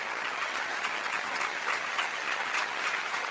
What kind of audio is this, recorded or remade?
remade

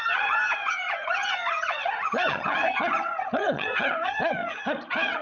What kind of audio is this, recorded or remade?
remade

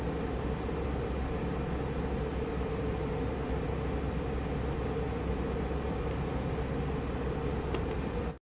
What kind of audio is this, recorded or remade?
recorded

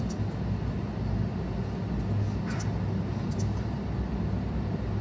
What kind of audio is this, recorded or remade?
recorded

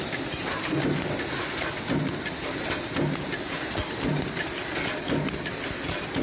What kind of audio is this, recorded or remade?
recorded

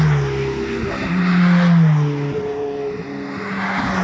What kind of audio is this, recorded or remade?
recorded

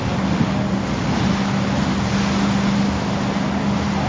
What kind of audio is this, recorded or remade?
recorded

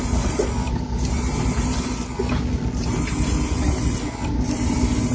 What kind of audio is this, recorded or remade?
recorded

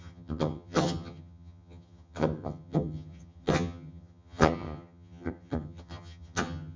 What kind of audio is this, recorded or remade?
remade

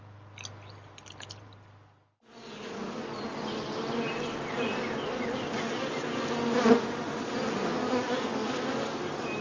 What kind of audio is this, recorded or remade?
recorded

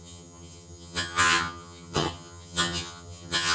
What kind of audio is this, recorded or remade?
remade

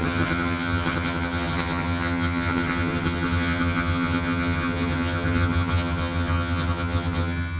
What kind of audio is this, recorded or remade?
remade